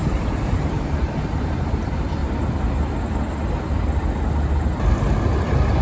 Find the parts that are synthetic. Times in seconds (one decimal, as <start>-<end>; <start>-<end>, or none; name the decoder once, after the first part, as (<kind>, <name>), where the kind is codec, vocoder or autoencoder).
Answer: 0.0-2.2 (vocoder, BigVGAN v2)

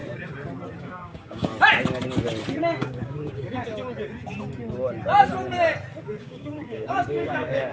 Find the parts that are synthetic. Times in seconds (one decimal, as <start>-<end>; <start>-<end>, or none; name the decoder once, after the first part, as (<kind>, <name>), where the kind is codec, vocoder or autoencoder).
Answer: 0.8-1.5 (codec, DAC); 2.6-3.6; 6.2-7.7

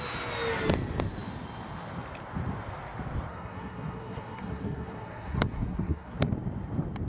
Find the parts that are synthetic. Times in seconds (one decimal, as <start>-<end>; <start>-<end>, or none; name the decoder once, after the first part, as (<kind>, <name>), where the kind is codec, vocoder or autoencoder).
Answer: 3.3-6.3 (codec, SNAC)

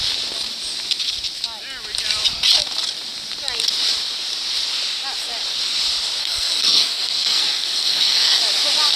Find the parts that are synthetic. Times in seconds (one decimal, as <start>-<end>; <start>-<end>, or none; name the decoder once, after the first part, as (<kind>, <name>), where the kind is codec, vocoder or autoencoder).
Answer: 6.2-8.4 (codec, SNAC)

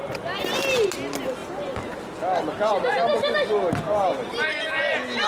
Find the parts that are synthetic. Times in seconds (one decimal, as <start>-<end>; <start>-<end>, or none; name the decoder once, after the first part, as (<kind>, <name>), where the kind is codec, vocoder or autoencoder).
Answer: none

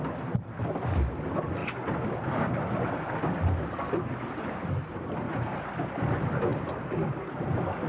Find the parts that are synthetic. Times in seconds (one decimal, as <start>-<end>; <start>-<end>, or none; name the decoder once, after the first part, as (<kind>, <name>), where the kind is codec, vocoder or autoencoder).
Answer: 6.5-7.9 (vocoder, BigVGAN v2)